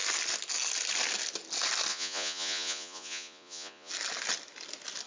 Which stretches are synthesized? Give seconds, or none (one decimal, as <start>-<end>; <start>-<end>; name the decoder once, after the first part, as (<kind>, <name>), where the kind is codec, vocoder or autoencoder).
1.9-3.9 (vocoder, Vocos)